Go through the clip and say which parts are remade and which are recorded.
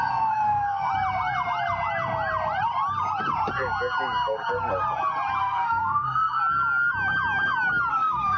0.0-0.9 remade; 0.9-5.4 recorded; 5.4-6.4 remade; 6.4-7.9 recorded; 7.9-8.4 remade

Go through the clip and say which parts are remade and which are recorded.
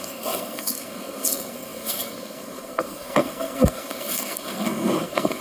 0.0-5.4 remade